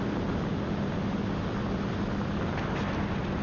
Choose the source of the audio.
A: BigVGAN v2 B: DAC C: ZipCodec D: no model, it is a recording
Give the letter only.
D